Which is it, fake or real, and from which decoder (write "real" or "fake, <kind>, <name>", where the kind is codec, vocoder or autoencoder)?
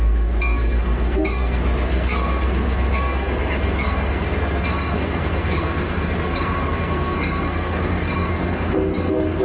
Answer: fake, codec, SNAC